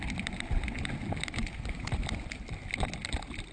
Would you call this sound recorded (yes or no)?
yes